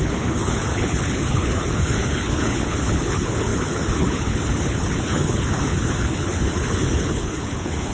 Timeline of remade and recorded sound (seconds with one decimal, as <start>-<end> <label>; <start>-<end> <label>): 0.0-7.9 remade